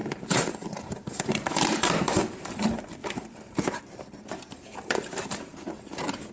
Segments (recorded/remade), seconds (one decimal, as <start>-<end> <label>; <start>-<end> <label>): 0.0-6.3 remade